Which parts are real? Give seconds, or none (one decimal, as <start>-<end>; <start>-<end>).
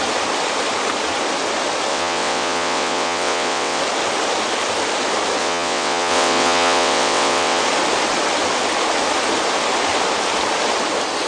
0.0-1.9; 3.8-5.4; 7.6-11.3